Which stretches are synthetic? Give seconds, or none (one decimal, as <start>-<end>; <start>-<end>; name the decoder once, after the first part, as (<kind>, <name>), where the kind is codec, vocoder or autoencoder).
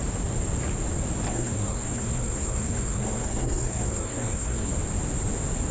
1.3-4.7 (codec, SNAC)